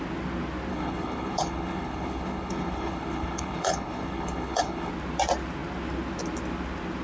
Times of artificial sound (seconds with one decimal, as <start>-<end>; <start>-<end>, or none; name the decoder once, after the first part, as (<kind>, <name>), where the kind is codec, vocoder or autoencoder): 0.7-4.9 (codec, HILCodec)